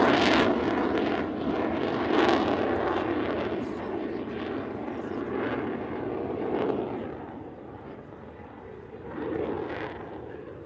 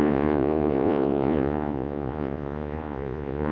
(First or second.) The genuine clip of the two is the first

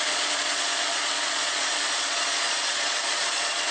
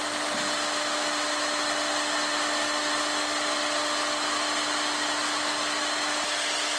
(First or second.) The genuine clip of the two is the second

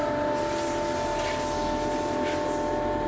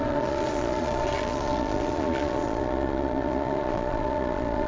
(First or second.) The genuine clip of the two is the first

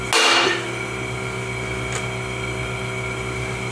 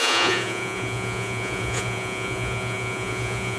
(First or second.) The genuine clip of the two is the first